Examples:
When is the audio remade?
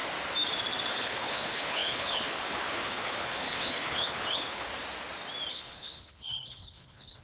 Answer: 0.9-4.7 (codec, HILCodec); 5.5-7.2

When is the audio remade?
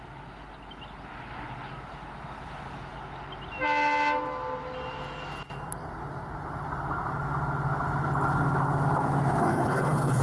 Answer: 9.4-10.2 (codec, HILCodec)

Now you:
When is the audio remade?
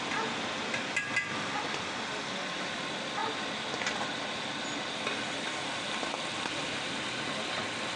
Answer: none